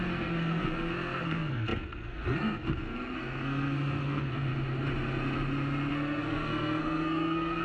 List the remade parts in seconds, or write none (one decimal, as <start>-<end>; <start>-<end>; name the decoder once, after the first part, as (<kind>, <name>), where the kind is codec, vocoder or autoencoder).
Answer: 0.0-4.5 (codec, SNAC); 5.9-7.6